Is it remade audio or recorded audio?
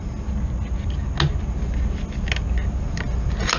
recorded